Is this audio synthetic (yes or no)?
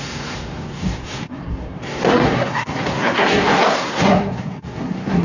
yes